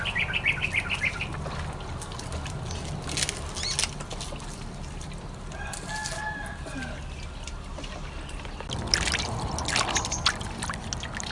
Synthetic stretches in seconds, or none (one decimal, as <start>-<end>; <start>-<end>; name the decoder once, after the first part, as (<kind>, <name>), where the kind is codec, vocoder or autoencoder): none